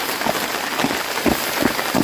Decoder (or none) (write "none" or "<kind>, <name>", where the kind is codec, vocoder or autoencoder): none